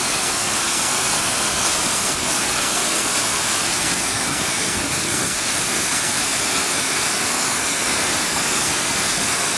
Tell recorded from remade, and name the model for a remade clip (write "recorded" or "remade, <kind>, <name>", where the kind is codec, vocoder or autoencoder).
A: remade, codec, SNAC